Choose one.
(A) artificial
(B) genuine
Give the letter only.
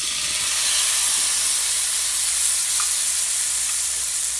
B